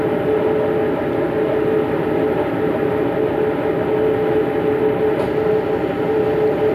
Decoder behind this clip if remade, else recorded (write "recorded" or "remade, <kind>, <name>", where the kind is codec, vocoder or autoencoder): recorded